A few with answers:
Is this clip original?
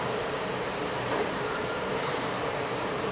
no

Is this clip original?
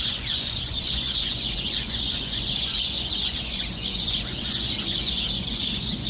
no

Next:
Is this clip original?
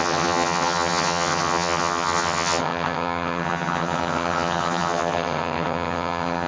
no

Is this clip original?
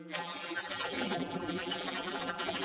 no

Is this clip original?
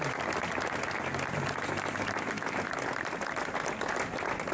yes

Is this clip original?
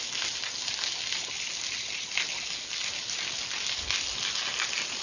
yes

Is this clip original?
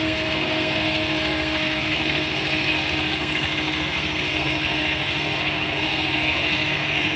no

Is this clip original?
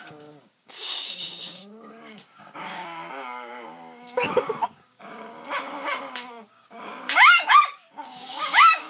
no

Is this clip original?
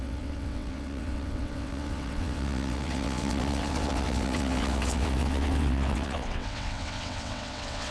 no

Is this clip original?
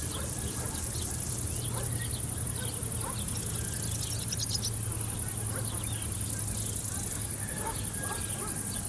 yes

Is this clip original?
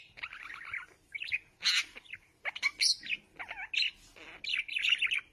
yes